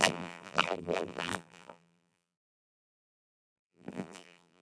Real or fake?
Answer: fake